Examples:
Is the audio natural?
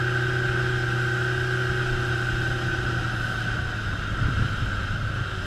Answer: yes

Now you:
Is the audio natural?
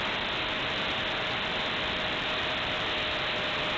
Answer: yes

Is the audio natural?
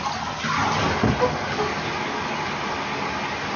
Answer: yes